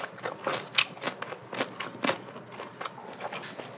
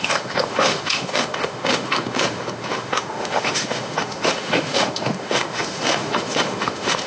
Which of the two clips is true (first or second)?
first